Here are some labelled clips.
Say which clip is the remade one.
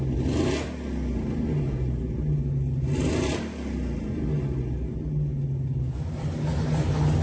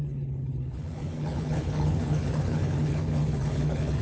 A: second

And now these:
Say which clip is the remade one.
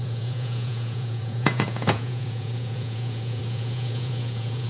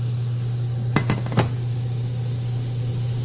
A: first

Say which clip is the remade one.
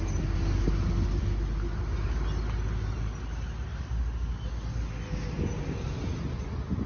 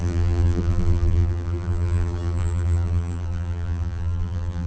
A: second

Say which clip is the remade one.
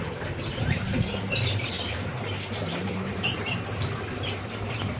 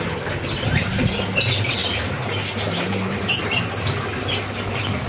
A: first